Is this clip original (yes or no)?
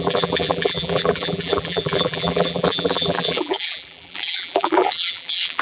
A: no